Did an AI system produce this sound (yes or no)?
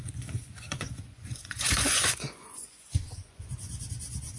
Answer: yes